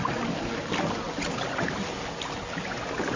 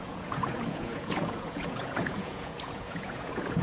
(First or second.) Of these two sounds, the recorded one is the first